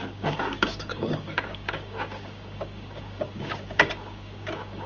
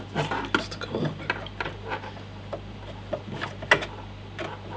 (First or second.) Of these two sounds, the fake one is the first